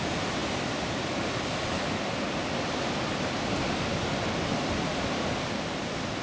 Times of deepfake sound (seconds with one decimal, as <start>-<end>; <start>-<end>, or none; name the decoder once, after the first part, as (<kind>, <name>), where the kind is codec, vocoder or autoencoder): none